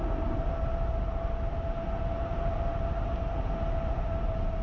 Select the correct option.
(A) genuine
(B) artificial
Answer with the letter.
A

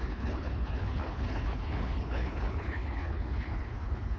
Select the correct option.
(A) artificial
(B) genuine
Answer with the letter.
A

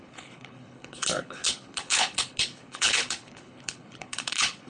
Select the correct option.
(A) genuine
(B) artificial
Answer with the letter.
B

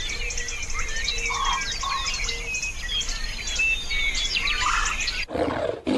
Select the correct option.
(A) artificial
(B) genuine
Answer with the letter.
B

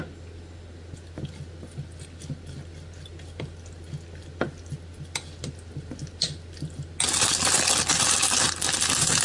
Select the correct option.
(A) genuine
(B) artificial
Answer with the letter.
A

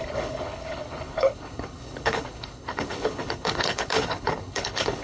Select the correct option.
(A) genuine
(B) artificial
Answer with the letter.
B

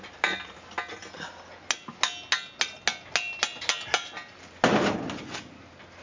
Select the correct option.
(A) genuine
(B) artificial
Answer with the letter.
A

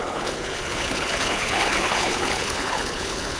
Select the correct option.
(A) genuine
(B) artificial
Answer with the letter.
B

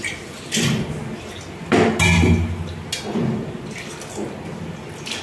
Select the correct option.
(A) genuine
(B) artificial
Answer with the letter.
A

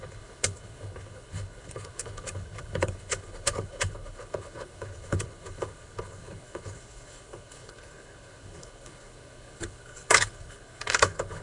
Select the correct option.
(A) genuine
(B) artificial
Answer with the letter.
B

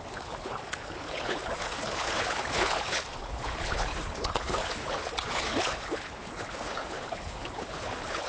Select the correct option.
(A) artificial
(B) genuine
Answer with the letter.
A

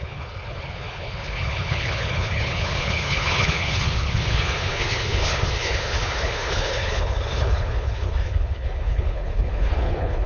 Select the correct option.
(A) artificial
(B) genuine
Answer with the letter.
A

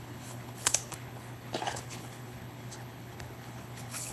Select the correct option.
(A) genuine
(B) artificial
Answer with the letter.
B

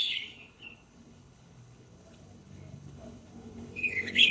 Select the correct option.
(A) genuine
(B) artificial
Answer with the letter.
B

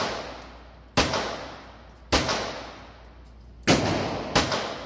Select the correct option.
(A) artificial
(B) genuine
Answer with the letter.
B